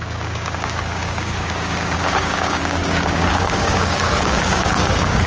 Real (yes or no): no